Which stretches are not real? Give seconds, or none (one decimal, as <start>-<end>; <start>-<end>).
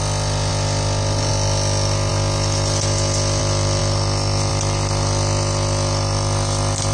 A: none